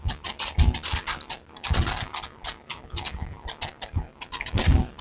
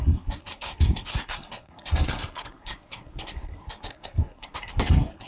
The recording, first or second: first